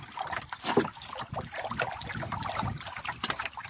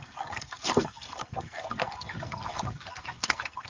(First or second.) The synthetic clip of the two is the second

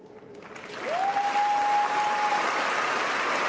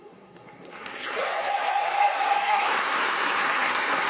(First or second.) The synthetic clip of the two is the second